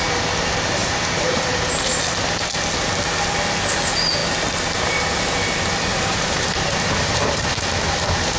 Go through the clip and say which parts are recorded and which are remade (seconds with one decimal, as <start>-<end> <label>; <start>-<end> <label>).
0.0-0.8 recorded; 0.8-2.0 remade; 2.0-5.9 recorded; 5.9-7.6 remade; 7.6-8.4 recorded